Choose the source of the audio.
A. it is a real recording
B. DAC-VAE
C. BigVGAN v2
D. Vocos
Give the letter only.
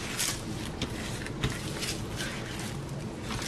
A